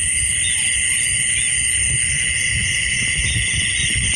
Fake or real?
real